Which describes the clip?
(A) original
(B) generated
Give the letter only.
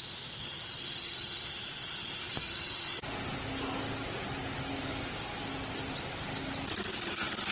A